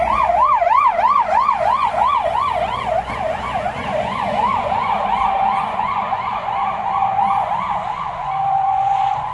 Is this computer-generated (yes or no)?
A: yes